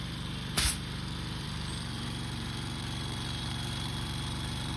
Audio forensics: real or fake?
fake